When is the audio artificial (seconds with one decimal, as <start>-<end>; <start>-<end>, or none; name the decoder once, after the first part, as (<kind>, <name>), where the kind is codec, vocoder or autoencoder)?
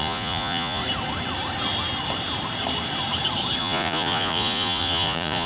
0.0-0.8 (vocoder, Vocos); 3.6-5.5